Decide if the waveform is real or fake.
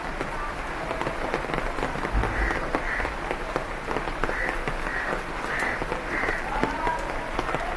real